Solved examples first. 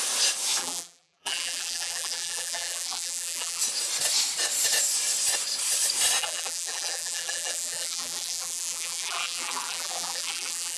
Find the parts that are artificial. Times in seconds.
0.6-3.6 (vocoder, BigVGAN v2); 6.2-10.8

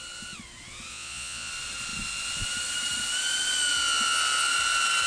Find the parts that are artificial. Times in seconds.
0.9-1.5 (vocoder, Vocos)

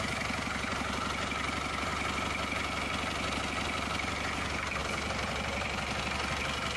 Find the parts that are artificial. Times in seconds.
4.8-6.0 (vocoder, BigVGAN v2)